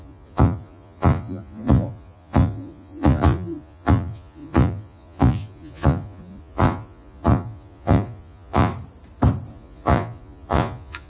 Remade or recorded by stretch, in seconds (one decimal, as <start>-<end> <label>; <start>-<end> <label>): 0.0-8.7 remade; 8.7-9.5 recorded; 9.5-11.1 remade